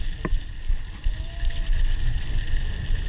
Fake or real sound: real